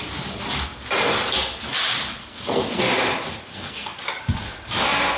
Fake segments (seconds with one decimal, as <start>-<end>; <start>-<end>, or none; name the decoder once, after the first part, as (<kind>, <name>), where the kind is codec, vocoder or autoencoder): 2.2-2.8 (codec, SNAC); 3.5-4.0